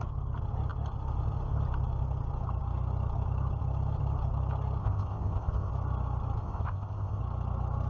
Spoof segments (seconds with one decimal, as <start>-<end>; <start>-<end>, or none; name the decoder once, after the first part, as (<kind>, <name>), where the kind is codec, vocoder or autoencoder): 4.8-5.7 (codec, ZipCodec); 6.4-7.2